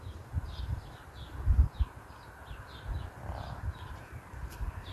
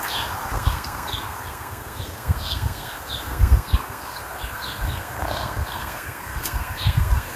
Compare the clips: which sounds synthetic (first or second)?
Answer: second